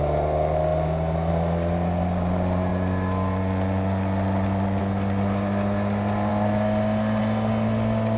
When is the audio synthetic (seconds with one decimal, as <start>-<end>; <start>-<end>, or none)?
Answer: none